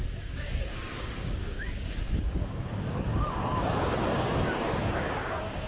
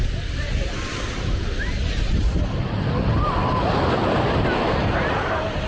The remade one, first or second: first